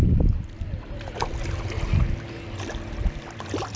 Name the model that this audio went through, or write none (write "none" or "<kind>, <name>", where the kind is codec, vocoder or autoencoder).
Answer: none